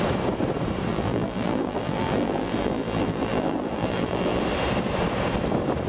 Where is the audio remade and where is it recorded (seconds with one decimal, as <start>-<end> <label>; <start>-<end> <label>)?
0.0-0.9 recorded; 0.9-4.4 remade; 4.4-5.9 recorded